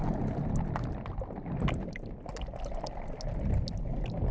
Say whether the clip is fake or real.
real